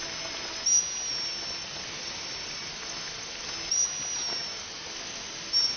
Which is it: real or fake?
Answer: real